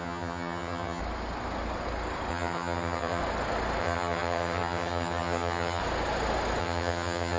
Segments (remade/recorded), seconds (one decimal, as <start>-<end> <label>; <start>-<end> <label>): 0.0-1.0 remade; 1.0-2.3 recorded; 2.3-3.2 remade; 3.2-3.8 recorded; 3.8-5.8 remade; 5.8-6.6 recorded; 6.6-7.4 remade